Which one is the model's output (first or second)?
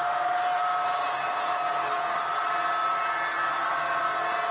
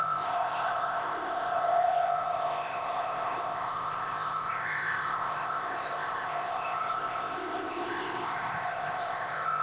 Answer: second